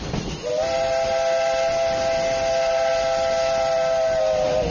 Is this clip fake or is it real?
real